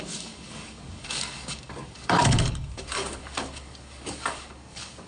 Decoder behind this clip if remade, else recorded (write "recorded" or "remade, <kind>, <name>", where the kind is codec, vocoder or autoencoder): remade, codec, DAC